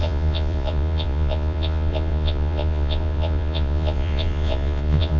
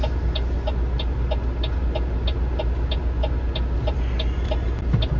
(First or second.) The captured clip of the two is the second